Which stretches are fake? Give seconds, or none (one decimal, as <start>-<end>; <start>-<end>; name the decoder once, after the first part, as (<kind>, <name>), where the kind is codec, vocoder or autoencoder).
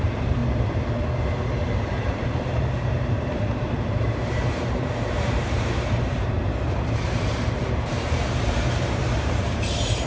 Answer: 0.0-0.4 (vocoder, BigVGAN v2); 1.6-10.1